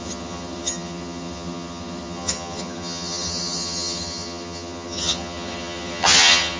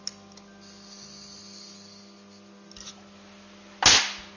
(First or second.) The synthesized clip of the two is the first